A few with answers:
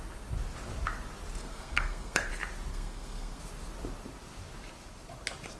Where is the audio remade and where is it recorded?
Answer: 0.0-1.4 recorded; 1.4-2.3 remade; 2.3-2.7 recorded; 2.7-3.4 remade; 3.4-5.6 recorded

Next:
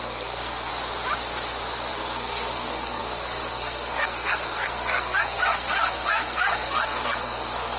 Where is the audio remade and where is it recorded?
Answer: 0.0-0.7 remade; 0.7-1.9 recorded; 1.9-7.8 remade